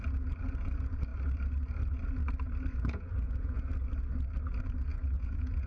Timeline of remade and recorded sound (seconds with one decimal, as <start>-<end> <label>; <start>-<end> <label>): 0.0-2.7 recorded; 2.7-3.7 remade; 3.7-4.9 recorded; 4.9-5.7 remade